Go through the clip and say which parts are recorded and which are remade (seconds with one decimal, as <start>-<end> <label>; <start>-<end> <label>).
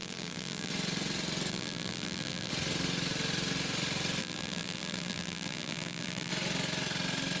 0.0-0.7 remade; 0.7-1.5 recorded; 1.5-2.5 remade; 2.5-4.2 recorded; 4.2-6.3 remade; 6.3-7.4 recorded